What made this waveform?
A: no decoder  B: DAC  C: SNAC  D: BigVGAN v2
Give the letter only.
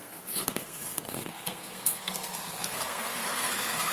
C